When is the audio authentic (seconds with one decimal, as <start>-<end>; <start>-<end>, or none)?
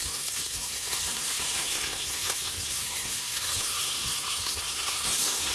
none